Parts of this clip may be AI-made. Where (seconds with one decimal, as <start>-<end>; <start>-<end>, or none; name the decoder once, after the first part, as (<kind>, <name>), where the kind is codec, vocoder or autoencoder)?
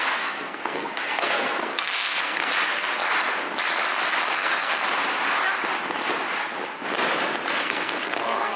0.0-2.5 (codec, SNAC); 4.3-4.8; 7.6-8.6